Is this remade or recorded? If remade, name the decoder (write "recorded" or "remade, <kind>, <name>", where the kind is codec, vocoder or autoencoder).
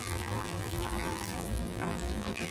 remade, vocoder, BigVGAN v2